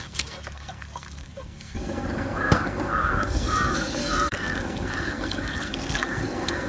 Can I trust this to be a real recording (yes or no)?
no